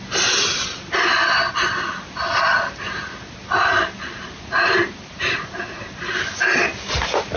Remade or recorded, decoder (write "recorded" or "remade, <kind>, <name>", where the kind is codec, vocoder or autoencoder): recorded